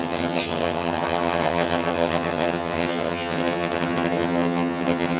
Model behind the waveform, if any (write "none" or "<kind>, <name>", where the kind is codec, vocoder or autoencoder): vocoder, HiFi-GAN